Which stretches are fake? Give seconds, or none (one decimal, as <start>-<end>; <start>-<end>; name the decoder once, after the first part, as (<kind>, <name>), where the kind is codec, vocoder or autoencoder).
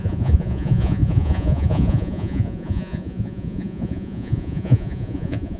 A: 0.0-5.6 (vocoder, Vocos)